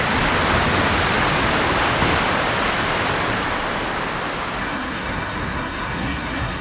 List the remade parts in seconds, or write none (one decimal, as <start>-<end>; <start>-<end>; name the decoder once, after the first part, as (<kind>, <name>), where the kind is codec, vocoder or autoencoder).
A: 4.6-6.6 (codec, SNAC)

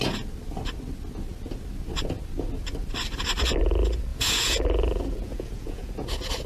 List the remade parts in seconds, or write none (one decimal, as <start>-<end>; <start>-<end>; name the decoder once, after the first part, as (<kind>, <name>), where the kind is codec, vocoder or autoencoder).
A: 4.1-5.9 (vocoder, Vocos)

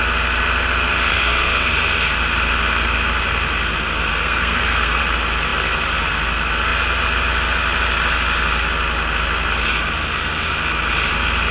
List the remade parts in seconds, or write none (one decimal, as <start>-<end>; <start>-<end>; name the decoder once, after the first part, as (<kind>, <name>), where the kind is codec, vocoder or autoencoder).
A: 1.1-1.7 (codec, SNAC); 4.1-5.0

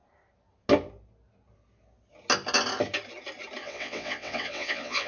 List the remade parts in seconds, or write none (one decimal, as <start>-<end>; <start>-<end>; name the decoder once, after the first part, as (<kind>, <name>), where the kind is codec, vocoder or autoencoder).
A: 3.6-5.1 (vocoder, WaveNeXt)